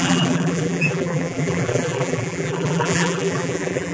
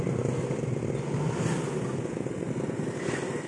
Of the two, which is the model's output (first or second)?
first